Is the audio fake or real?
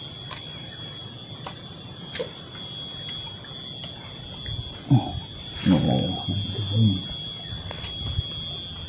real